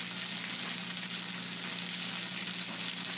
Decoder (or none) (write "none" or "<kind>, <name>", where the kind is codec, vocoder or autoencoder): none